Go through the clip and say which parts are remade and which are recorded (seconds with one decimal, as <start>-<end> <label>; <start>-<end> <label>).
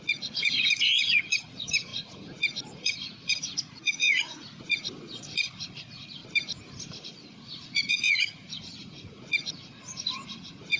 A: 0.0-6.2 remade; 6.2-7.0 recorded; 7.0-10.8 remade